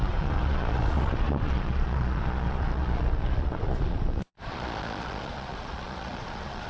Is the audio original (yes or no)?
no